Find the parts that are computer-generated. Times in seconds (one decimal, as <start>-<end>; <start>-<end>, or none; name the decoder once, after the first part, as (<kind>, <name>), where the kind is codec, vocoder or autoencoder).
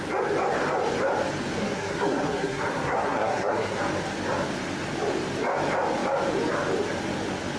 1.6-3.8 (codec, SNAC)